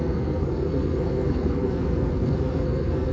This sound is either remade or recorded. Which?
remade